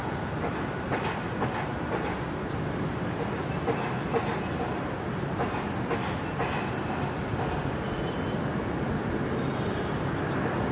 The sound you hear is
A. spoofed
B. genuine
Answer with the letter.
B